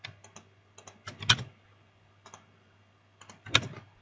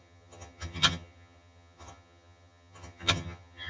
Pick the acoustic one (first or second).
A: first